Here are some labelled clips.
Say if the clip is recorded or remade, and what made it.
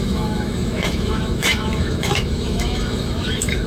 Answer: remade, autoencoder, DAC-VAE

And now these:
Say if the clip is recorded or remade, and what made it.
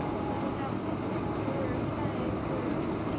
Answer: recorded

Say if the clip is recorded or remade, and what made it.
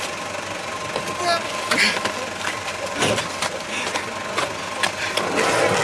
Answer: recorded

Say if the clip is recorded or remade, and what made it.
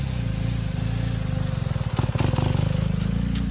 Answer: recorded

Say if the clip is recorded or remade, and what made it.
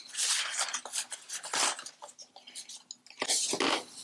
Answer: recorded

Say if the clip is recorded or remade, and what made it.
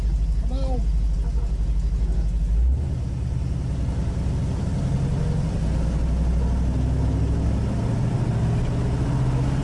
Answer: recorded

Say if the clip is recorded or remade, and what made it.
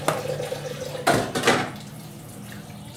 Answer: recorded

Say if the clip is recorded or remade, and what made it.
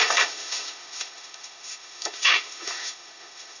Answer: remade, autoencoder, DAC-VAE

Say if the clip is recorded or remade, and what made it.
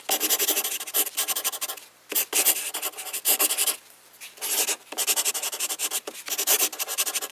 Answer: recorded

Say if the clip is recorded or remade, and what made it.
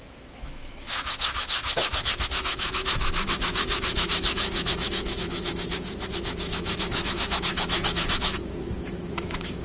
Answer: remade, autoencoder, DAC-VAE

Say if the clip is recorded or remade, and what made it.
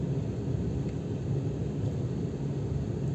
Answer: recorded